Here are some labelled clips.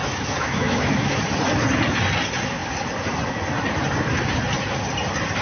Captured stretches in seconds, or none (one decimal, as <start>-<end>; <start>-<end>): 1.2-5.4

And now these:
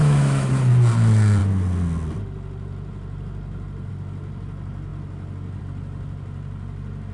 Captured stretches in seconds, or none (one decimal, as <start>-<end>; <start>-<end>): 0.6-7.1

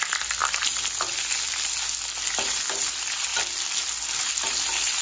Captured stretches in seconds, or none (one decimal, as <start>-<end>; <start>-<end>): 0.0-5.0